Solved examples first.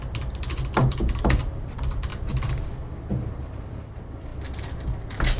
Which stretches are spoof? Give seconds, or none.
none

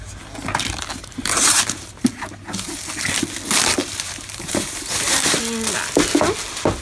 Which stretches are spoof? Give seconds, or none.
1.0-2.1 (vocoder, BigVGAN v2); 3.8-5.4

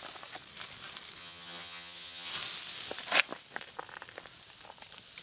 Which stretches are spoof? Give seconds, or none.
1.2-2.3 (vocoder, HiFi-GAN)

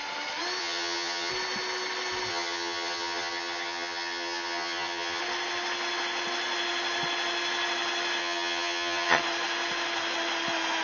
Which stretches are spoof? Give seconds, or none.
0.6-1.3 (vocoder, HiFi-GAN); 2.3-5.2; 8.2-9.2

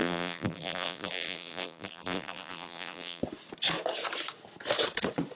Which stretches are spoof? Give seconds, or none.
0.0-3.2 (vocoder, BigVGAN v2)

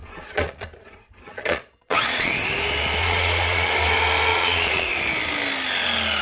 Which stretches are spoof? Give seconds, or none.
0.0-2.3 (vocoder, Vocos); 3.0-3.7; 4.3-4.9